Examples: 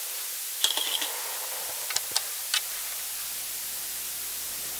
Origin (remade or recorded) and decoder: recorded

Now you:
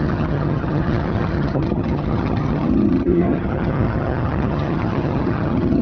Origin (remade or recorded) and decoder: remade, vocoder, HiFi-GAN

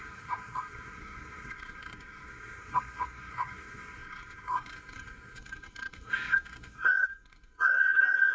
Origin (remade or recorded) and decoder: remade, codec, SNAC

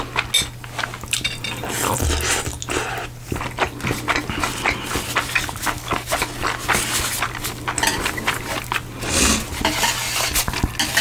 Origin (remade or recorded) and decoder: recorded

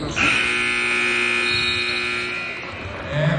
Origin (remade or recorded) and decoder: recorded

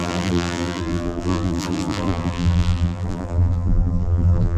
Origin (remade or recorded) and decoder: remade, vocoder, BigVGAN v2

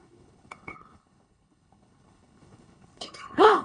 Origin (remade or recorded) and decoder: remade, codec, HILCodec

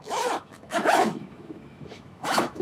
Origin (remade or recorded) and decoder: remade, autoencoder, DAC-VAE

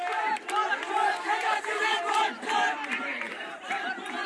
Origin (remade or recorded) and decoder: remade, vocoder, BigVGAN v2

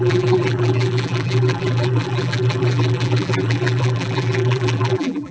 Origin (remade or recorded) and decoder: remade, vocoder, BigVGAN v2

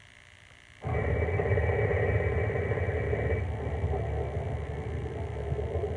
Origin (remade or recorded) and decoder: recorded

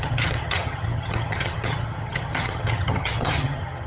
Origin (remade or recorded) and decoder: remade, vocoder, HiFi-GAN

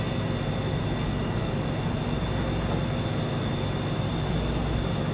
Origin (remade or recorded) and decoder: recorded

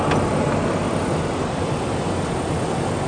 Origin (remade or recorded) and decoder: recorded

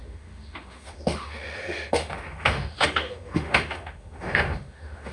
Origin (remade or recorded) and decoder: remade, autoencoder, DAC-VAE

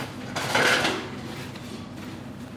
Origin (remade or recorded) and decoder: remade, vocoder, BigVGAN v2